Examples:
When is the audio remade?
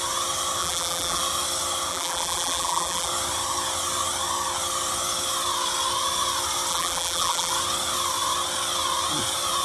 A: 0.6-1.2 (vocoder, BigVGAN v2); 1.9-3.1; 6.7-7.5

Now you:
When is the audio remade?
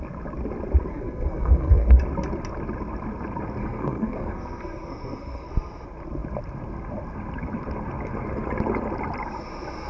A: 0.9-2.0 (codec, SNAC); 3.6-5.5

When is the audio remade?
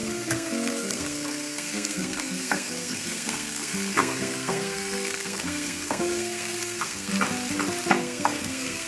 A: 0.0-7.1 (codec, SNAC); 7.9-8.9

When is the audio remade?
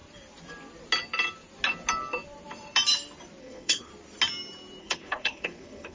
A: 3.4-3.9 (codec, HILCodec); 4.8-5.9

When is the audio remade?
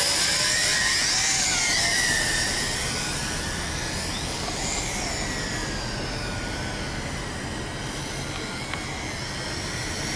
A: none